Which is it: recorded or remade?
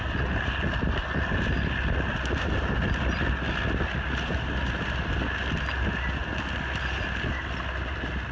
recorded